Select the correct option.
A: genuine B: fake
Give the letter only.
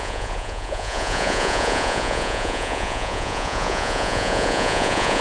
B